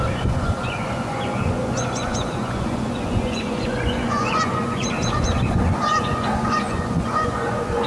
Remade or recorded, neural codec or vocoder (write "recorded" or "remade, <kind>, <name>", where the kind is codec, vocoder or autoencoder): remade, vocoder, Vocos